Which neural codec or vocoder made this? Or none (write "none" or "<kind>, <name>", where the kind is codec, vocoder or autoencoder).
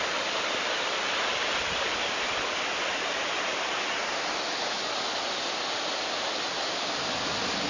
none